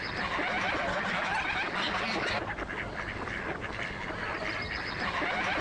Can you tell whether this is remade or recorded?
recorded